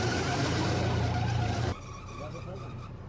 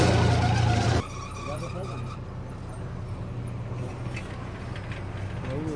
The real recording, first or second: second